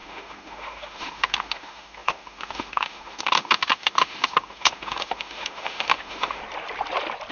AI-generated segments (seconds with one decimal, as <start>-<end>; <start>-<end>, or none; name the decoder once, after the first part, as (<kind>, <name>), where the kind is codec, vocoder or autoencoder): 0.0-6.4 (autoencoder, DAC-VAE)